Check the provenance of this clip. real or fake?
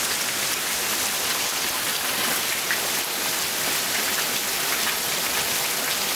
real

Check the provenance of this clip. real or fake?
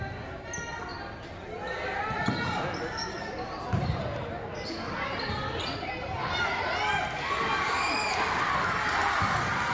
real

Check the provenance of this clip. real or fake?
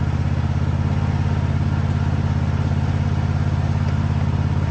real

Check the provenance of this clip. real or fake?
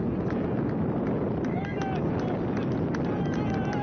real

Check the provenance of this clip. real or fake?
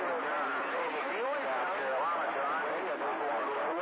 real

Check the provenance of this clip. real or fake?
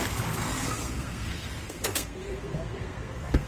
fake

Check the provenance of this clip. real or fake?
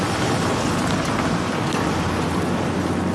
real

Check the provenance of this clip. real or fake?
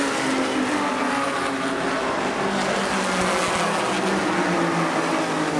real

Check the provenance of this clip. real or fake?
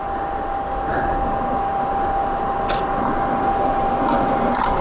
real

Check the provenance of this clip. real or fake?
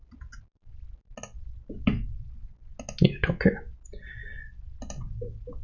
real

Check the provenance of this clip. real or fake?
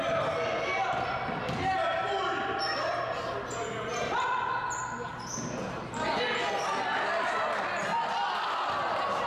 real